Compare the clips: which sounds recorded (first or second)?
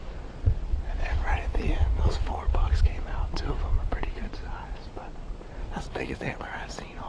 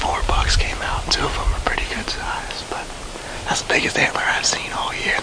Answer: second